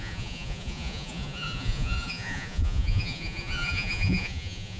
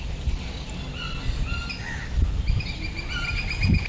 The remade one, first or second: first